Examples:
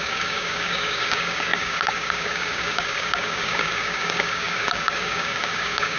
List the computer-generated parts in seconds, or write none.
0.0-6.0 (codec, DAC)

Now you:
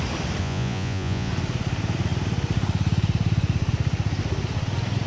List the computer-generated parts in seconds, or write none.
0.4-1.3 (vocoder, Vocos)

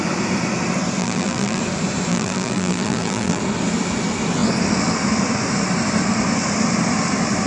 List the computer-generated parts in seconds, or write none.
1.0-1.6 (vocoder, BigVGAN v2); 2.1-3.4

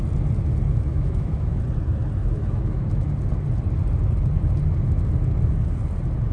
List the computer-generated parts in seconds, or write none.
0.9-1.6 (autoencoder, DAC-VAE); 2.2-2.9

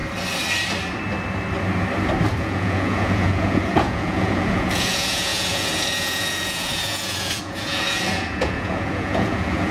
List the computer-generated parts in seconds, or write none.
2.4-9.7 (vocoder, Vocos)

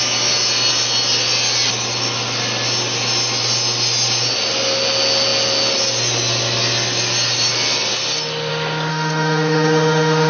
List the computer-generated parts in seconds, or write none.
8.9-10.3 (autoencoder, DAC-VAE)